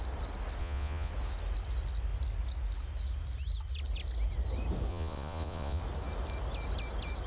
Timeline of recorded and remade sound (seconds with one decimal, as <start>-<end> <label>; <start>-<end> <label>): 0.0-0.6 recorded; 0.6-1.1 remade; 1.1-4.9 recorded; 4.9-5.8 remade; 5.8-7.3 recorded